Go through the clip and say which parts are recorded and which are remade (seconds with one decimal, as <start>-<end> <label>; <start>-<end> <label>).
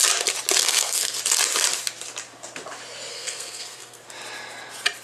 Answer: 0.0-0.6 recorded; 0.6-1.2 remade; 1.2-3.1 recorded; 3.1-4.0 remade; 4.0-5.0 recorded